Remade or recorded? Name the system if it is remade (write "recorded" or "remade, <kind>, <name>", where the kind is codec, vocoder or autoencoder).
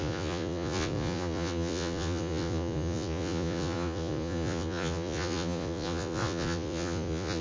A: remade, vocoder, Vocos